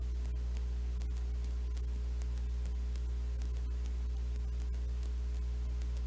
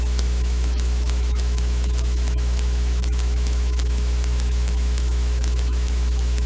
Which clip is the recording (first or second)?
first